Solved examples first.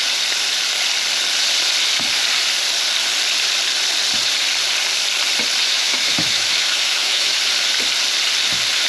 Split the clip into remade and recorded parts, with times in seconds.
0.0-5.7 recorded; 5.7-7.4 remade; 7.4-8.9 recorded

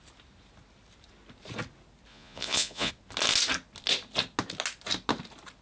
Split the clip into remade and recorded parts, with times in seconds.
0.0-2.1 recorded; 2.1-2.9 remade; 2.9-5.6 recorded

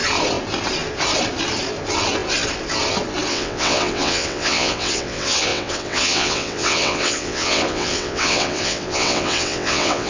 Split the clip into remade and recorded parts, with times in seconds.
0.0-3.3 recorded; 3.3-10.1 remade